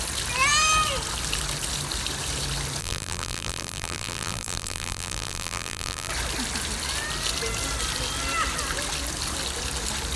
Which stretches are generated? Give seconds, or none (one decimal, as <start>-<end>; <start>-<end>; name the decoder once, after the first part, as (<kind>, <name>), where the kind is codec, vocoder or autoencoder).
2.8-6.1 (vocoder, BigVGAN v2)